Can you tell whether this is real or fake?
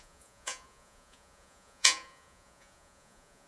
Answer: fake